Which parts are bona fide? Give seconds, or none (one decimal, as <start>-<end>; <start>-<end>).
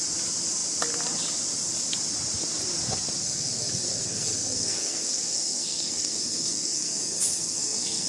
0.0-3.2